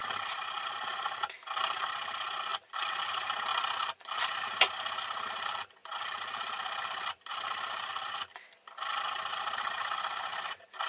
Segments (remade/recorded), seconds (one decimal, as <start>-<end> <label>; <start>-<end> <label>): 0.0-3.5 remade; 3.5-4.6 recorded; 4.6-10.9 remade